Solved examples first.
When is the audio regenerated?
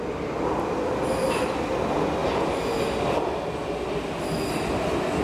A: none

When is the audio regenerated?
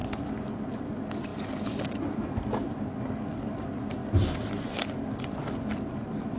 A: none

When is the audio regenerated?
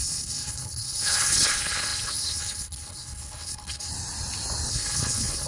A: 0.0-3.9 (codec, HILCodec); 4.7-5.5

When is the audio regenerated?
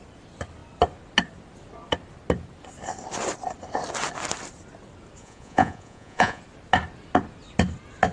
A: 5.2-6.4 (vocoder, Vocos)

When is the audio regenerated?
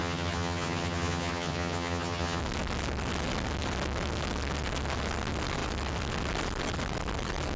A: 0.0-2.4 (vocoder, HiFi-GAN)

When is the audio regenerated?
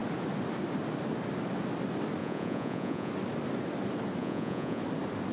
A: 2.2-3.1 (vocoder, Vocos); 4.2-4.8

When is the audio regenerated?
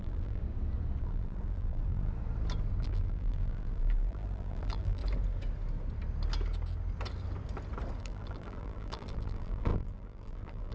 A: 0.0-0.4 (vocoder, BigVGAN v2); 1.0-2.1; 2.8-5.0; 8.0-10.7